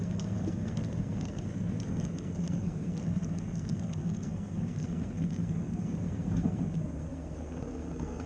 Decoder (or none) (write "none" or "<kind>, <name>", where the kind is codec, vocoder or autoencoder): codec, SNAC